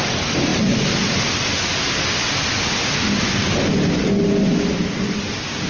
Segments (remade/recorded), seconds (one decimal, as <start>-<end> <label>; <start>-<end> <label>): 0.0-0.5 recorded; 0.5-1.3 remade; 1.3-5.7 recorded